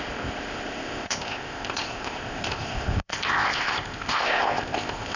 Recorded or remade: remade